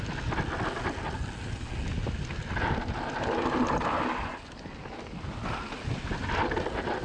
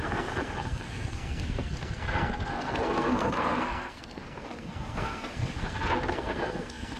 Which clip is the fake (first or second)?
second